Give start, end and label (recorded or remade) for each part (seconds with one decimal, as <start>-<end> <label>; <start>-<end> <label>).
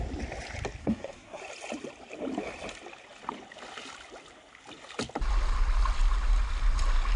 0.0-0.8 recorded; 0.8-1.4 remade; 1.4-7.2 recorded